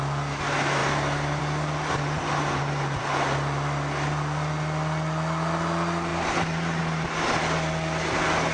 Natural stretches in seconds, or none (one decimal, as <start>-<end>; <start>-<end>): 0.0-8.5

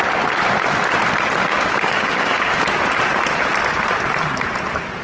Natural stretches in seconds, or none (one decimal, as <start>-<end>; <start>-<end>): 0.0-1.4; 2.6-5.0

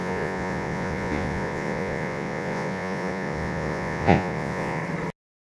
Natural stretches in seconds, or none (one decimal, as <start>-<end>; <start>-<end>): 4.8-5.6

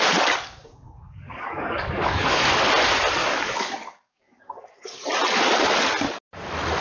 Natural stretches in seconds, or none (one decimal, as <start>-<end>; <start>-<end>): 0.0-0.6; 2.5-3.2; 5.0-6.8

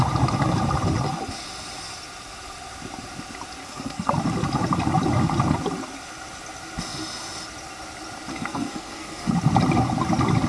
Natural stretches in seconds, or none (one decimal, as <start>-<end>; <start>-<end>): 0.0-3.6; 4.1-8.3; 9.3-10.5